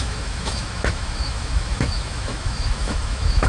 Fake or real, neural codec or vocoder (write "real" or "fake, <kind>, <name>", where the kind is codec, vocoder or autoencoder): fake, autoencoder, DAC-VAE